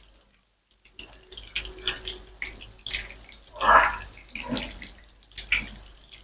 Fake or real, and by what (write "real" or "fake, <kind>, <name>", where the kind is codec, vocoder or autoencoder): real